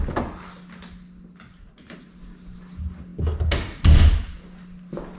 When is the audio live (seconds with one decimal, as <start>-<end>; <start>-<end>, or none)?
0.0-5.2